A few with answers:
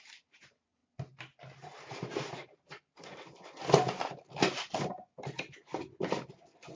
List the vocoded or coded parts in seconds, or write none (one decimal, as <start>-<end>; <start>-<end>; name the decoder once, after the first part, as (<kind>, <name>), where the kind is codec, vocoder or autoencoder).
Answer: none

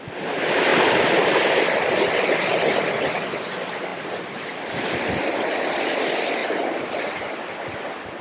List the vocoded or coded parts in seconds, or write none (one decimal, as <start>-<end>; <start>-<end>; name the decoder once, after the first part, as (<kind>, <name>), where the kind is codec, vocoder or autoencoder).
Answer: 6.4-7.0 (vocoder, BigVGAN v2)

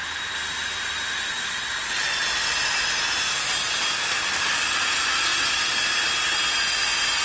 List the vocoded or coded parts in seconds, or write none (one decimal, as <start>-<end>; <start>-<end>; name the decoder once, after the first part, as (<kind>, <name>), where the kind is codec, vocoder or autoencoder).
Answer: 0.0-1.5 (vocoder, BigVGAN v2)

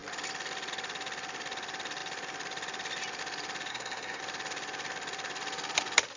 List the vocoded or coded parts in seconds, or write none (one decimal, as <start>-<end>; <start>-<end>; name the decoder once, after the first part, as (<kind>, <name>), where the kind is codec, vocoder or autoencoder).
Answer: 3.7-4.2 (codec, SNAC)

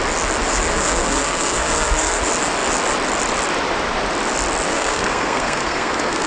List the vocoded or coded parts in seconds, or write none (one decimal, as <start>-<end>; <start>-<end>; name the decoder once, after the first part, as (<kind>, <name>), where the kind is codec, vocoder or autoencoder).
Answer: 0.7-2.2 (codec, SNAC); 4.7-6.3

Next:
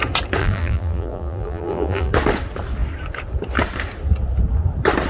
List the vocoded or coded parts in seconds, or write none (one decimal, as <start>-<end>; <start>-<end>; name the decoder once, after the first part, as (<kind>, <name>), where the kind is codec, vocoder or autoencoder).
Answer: 0.4-2.1 (vocoder, BigVGAN v2)